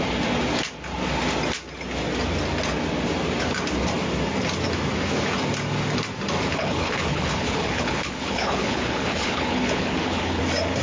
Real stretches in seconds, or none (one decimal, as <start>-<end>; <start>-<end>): 0.0-6.5; 10.4-10.8